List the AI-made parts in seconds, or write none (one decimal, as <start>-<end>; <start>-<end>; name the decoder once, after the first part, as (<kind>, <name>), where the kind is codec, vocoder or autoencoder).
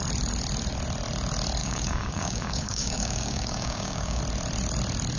1.6-4.2 (codec, DAC)